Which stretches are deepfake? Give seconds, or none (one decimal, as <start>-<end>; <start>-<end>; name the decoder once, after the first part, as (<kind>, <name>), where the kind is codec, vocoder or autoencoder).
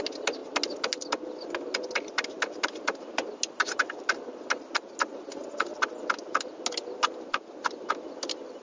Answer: none